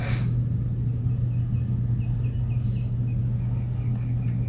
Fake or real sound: real